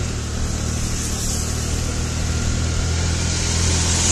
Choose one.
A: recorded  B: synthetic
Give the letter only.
A